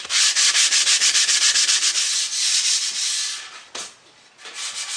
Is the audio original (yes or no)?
yes